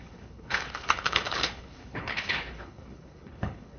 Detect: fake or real fake